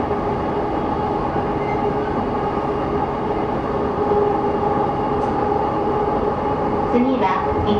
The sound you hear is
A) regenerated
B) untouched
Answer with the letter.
B